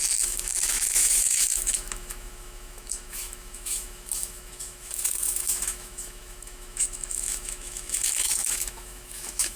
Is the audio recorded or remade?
remade